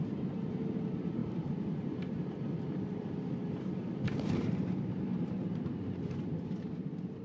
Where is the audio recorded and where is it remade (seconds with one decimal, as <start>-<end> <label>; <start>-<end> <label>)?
0.0-7.2 remade